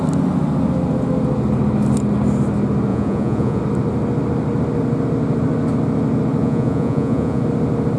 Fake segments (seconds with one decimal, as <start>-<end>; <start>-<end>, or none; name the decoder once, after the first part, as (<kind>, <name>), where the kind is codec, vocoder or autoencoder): 2.9-3.6 (vocoder, Vocos); 6.4-7.4